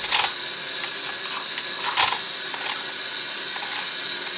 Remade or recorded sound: recorded